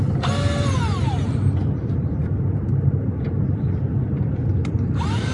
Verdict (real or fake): real